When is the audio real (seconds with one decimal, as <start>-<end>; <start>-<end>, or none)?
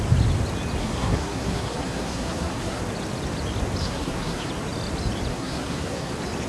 0.0-0.8; 2.8-3.8; 4.5-5.3; 6.1-6.5